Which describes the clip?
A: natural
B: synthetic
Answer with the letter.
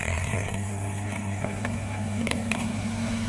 B